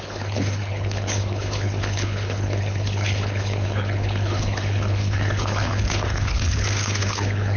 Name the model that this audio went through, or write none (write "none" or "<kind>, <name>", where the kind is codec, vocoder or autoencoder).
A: codec, HILCodec